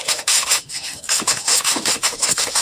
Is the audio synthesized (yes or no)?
yes